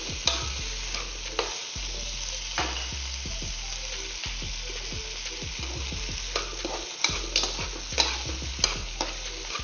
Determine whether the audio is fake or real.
real